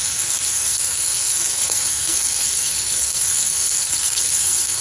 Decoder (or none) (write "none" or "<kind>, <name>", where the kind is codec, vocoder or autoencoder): codec, SNAC